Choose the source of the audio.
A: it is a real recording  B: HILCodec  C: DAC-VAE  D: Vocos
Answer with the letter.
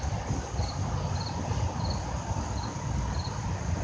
A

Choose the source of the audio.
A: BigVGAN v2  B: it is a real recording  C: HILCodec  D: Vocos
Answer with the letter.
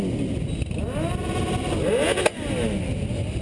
B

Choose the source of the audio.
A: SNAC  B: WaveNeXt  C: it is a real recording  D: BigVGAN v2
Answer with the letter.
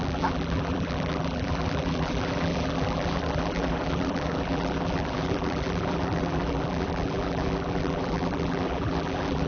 D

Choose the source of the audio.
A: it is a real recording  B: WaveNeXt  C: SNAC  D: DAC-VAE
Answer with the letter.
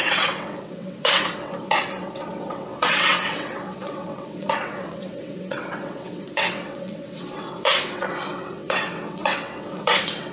B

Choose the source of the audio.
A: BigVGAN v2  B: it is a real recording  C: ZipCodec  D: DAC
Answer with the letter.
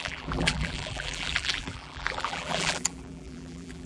A